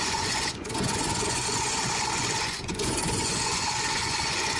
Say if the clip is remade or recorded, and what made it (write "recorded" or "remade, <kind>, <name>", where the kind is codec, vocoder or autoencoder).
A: remade, vocoder, Vocos